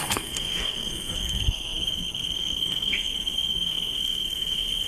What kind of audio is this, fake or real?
fake